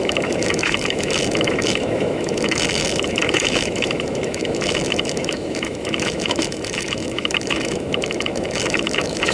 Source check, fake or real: fake